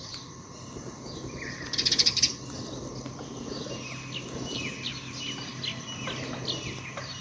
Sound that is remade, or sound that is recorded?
recorded